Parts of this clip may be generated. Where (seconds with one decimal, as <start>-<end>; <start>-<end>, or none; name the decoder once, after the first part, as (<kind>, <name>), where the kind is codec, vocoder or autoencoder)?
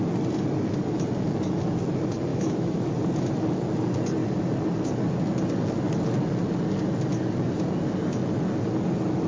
2.3-2.9 (autoencoder, DAC-VAE)